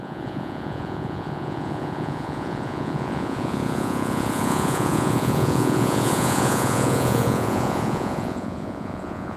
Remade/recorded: remade